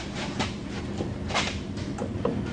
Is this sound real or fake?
real